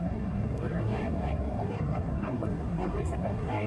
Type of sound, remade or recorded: remade